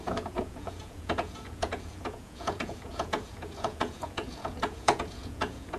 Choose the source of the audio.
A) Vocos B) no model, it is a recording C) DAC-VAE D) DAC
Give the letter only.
A